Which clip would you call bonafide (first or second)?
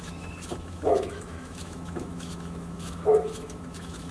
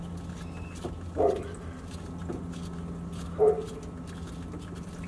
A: second